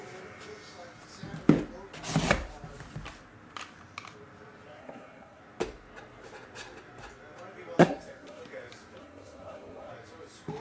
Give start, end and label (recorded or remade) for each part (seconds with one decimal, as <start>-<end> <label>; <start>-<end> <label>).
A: 0.0-4.8 recorded; 4.8-5.4 remade; 5.4-7.8 recorded; 7.8-8.4 remade; 8.4-9.0 recorded; 9.0-9.9 remade; 9.9-10.6 recorded